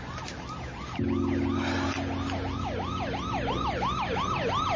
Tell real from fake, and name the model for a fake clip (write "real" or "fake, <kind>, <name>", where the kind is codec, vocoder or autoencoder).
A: real